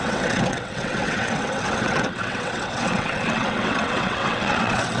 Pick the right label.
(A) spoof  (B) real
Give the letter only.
A